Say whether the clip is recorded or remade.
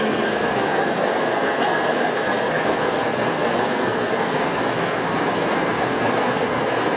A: remade